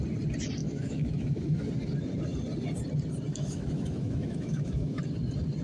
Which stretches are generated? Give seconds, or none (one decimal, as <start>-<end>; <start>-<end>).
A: 0.6-1.7; 3.3-5.0